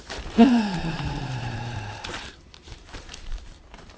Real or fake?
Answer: fake